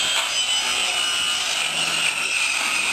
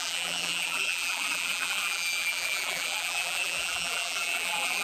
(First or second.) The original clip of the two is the first